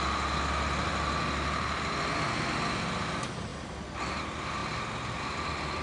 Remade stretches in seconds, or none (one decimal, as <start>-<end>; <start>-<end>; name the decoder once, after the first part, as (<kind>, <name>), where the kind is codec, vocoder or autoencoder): none